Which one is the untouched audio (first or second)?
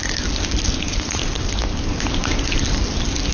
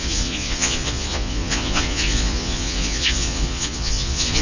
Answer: first